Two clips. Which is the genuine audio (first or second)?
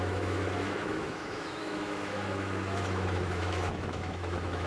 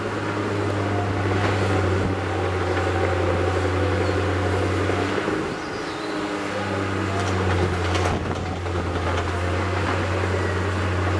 second